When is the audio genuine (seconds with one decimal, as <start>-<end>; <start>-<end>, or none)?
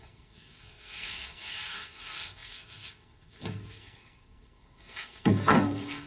none